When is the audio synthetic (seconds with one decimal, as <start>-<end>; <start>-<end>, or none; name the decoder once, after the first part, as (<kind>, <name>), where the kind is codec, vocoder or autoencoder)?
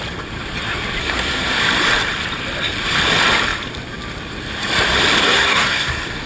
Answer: 1.0-1.6 (codec, SNAC); 5.2-6.3